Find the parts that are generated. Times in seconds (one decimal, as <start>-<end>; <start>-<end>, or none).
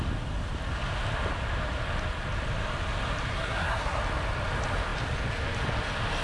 3.3-4.0